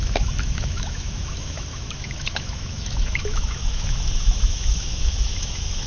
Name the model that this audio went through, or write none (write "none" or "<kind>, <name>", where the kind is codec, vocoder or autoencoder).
autoencoder, DAC-VAE